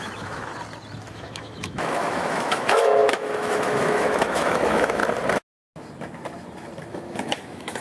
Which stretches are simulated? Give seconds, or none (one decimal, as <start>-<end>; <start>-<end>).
0.0-0.5; 1.1-5.0; 6.9-7.8